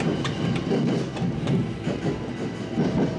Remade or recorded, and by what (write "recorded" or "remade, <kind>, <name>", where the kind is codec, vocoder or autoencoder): recorded